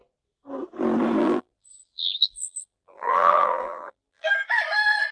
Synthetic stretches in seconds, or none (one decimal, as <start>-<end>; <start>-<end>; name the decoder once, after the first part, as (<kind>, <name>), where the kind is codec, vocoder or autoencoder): 1.2-4.3 (vocoder, BigVGAN v2)